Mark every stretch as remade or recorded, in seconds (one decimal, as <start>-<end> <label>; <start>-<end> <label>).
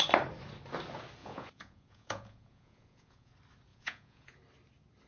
0.0-1.2 recorded; 1.2-3.3 remade; 3.3-3.7 recorded; 3.7-4.4 remade; 4.4-5.1 recorded